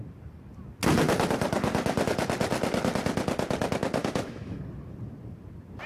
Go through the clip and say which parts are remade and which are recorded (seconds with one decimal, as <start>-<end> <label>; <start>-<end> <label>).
0.0-4.0 recorded; 4.0-4.6 remade; 4.6-5.9 recorded